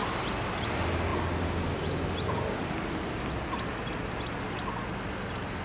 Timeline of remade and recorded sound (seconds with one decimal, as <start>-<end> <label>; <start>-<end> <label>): 0.0-5.6 recorded